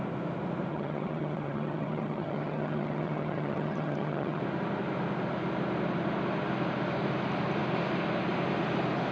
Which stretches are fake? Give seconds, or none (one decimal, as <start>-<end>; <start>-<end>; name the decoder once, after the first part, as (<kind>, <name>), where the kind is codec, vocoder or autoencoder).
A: 0.7-4.4 (vocoder, HiFi-GAN)